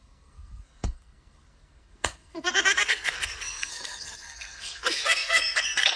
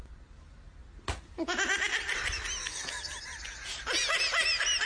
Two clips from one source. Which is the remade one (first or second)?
first